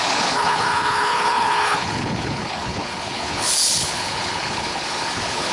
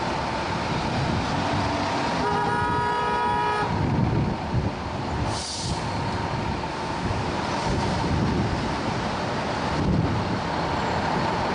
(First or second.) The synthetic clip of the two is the first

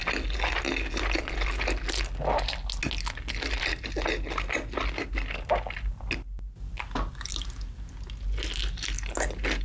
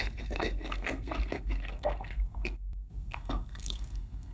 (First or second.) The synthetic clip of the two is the second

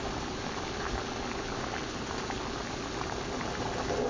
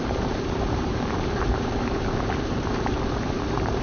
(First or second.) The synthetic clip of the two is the second